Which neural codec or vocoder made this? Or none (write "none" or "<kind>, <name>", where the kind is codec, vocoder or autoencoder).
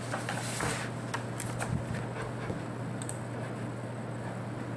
none